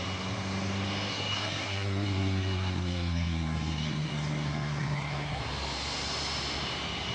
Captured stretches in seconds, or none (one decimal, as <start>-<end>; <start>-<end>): 0.0-1.1; 5.4-7.1